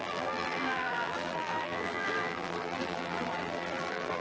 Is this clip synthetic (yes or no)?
yes